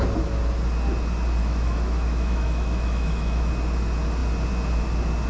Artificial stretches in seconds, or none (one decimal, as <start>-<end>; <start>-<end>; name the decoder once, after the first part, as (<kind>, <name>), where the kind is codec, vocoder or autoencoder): 1.4-3.5 (autoencoder, DAC-VAE)